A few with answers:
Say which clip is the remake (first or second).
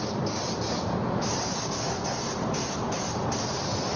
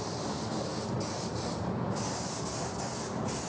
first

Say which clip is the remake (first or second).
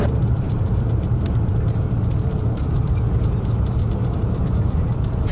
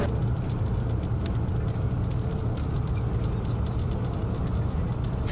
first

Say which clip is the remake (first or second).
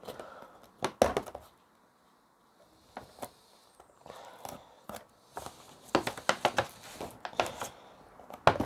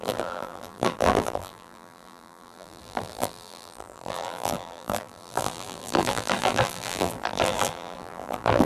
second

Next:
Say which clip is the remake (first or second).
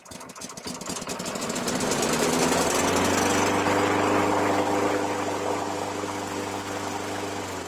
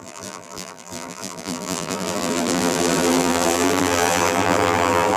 second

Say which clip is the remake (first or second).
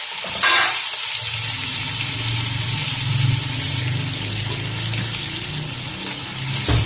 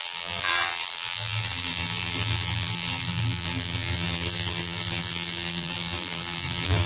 second